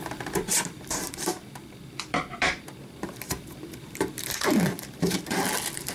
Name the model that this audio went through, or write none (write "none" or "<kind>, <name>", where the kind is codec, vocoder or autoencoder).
vocoder, BigVGAN v2